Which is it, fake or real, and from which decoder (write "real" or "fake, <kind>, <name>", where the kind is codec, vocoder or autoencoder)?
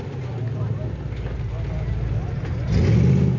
real